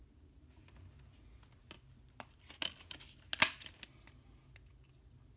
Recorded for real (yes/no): yes